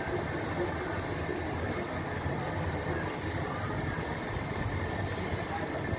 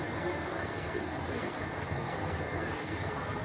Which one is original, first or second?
first